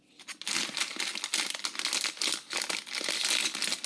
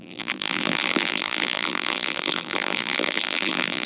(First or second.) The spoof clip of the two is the second